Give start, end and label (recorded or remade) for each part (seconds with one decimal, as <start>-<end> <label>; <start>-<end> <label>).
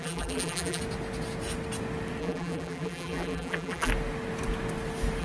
0.0-0.8 remade; 0.8-2.2 recorded; 2.2-3.9 remade; 3.9-5.2 recorded